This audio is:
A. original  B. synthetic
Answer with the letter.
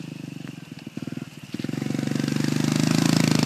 A